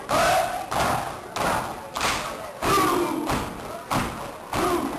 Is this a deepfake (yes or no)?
no